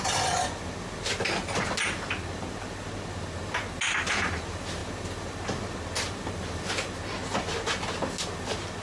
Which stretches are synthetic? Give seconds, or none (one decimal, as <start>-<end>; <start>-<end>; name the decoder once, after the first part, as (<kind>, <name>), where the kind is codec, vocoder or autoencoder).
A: none